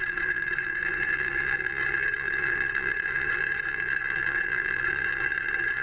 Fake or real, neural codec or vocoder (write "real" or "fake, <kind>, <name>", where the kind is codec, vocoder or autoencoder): fake, vocoder, WaveNeXt